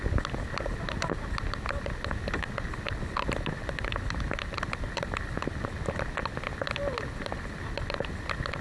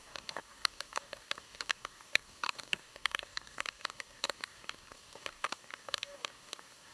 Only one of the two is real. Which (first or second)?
first